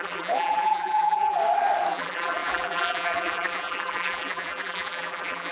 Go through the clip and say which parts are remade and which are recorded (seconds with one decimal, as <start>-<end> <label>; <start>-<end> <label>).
0.0-1.4 remade; 1.4-1.9 recorded; 1.9-5.5 remade